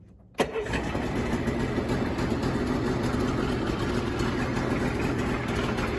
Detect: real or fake real